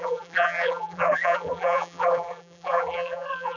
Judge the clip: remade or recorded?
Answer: remade